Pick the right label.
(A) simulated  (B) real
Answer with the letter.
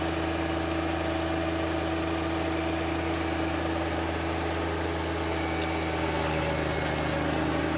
B